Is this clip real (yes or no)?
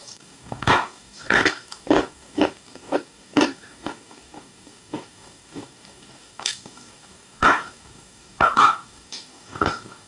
no